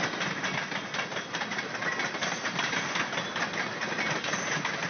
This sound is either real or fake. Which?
real